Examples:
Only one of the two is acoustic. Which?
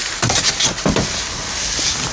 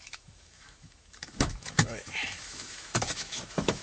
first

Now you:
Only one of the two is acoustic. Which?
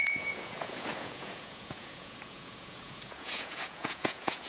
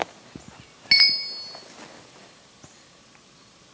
second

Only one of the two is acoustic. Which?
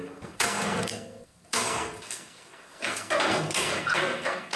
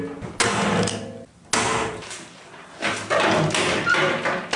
second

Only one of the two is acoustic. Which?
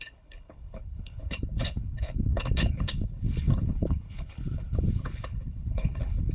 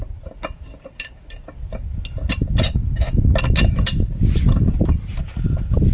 second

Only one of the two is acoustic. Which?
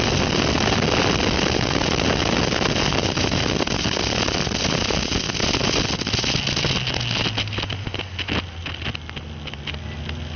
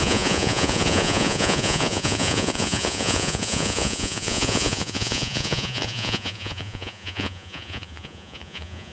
first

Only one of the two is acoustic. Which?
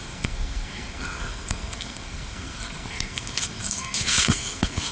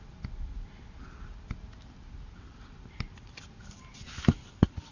second